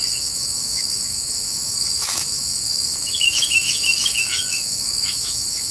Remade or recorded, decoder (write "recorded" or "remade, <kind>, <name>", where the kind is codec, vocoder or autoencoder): remade, autoencoder, DAC-VAE